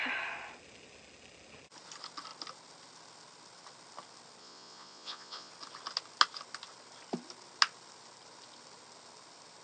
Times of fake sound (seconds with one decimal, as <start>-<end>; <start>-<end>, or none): 4.4-5.5